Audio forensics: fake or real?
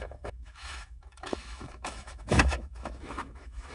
fake